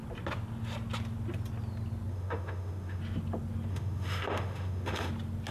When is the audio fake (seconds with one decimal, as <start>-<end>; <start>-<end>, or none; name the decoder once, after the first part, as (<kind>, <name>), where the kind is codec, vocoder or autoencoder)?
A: 2.1-3.0 (autoencoder, DAC-VAE); 3.7-5.1